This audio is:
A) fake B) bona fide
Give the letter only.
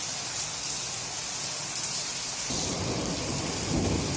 B